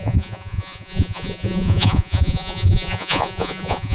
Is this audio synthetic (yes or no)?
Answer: yes